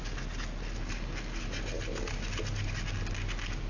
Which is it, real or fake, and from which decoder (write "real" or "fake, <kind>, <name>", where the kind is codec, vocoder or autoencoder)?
real